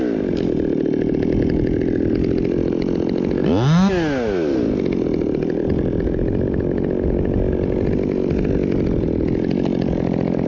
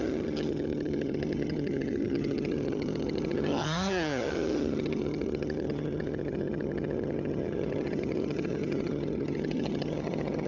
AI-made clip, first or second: second